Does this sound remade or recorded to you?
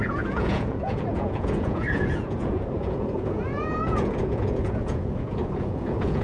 remade